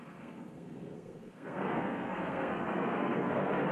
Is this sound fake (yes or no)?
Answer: yes